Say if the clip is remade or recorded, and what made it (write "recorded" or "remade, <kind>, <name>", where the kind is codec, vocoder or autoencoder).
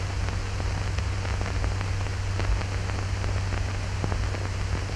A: recorded